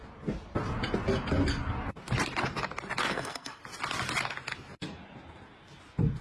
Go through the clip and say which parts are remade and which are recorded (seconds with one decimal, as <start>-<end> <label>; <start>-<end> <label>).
0.0-3.1 recorded; 3.1-3.6 remade; 3.6-6.2 recorded